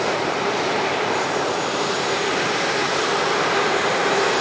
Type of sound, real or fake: fake